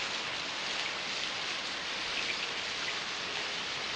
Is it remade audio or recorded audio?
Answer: recorded